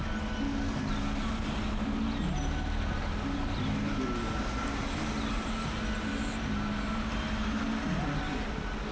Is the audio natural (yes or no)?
yes